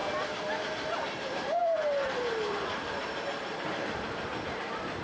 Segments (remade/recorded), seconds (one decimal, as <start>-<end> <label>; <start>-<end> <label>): 0.0-0.6 recorded; 0.6-5.0 remade